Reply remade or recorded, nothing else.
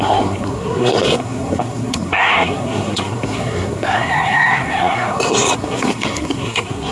remade